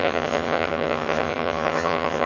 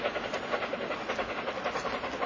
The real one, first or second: second